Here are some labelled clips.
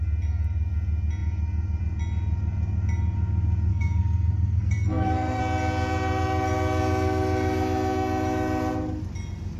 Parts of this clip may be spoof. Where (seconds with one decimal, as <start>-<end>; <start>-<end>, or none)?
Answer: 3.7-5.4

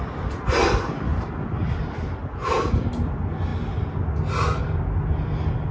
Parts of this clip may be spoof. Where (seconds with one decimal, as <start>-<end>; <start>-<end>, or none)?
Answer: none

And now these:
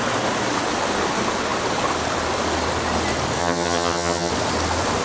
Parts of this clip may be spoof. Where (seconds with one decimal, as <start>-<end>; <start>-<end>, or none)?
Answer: 3.4-4.3

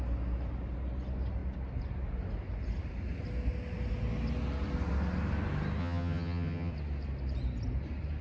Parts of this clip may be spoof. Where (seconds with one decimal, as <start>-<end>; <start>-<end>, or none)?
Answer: 5.8-6.7

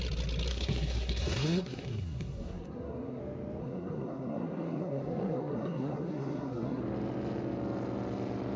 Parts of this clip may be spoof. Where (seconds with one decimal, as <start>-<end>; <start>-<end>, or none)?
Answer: 0.5-3.2; 3.6-6.8

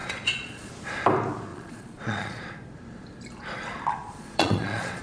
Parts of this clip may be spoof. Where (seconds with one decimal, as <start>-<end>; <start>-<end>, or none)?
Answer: 0.0-0.7; 1.5-2.5; 4.0-5.0

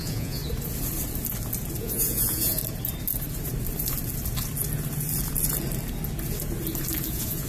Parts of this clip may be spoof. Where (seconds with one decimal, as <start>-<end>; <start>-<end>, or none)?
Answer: 0.0-0.4; 1.8-2.6; 7.1-7.5